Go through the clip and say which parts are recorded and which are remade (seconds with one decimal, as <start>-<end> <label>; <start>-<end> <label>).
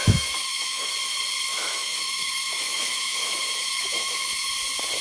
0.0-0.9 remade; 0.9-1.5 recorded; 1.5-4.5 remade; 4.5-5.0 recorded